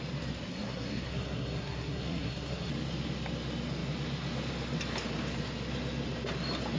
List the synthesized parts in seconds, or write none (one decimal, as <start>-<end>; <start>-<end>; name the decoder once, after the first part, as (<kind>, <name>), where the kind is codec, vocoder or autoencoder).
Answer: 0.5-2.7 (codec, SNAC)